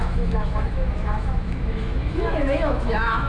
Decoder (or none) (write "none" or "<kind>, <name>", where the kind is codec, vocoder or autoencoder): autoencoder, DAC-VAE